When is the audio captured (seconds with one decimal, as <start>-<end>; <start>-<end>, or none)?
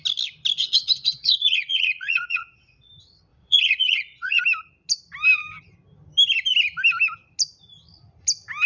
0.0-0.6; 2.9-3.3; 4.4-8.7